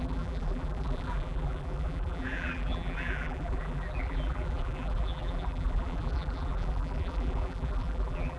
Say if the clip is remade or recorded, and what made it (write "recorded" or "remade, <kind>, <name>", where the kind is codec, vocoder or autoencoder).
remade, vocoder, BigVGAN v2